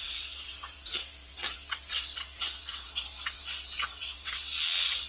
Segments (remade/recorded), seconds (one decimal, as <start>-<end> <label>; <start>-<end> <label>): 0.0-5.1 remade